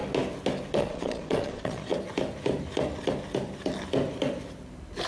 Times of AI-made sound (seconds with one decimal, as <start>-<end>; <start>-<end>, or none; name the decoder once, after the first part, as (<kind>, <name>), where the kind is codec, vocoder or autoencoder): 0.7-1.9 (vocoder, Vocos)